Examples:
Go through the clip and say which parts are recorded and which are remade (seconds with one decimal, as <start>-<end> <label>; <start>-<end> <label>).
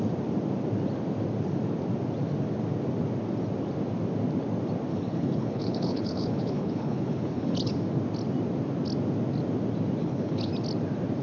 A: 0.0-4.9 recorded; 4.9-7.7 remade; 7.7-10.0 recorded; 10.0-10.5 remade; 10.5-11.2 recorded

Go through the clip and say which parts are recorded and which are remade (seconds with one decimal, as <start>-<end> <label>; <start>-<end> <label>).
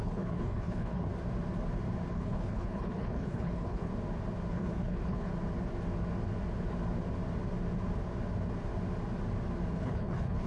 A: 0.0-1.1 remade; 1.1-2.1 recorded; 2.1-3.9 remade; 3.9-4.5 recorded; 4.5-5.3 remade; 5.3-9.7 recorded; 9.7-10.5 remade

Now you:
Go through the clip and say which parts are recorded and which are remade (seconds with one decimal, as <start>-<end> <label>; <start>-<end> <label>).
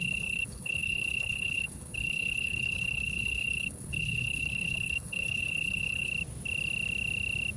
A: 0.0-6.1 remade; 6.1-7.6 recorded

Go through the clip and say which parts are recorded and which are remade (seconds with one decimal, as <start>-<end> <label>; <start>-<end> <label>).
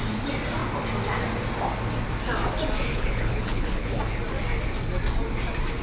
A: 0.0-2.9 recorded; 2.9-4.0 remade; 4.0-5.8 recorded